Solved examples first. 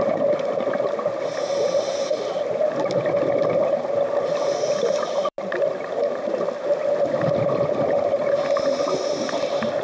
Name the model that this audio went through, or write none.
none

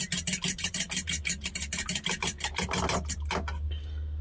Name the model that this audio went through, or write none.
none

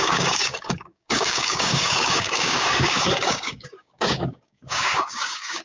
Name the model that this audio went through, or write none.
codec, DAC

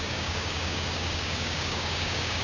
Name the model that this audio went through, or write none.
codec, DAC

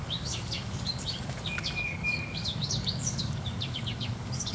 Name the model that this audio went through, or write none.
codec, DAC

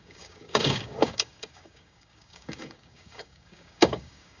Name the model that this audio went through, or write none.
codec, DAC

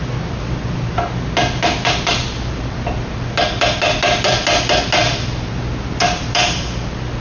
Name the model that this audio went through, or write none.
none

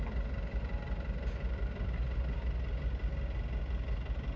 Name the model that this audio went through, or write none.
none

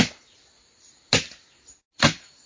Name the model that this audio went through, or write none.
none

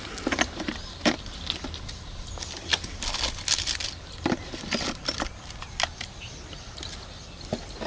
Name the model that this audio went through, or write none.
none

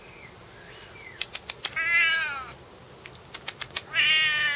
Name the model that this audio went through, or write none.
none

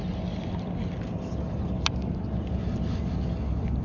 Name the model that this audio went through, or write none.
none